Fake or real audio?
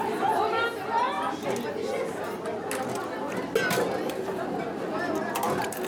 real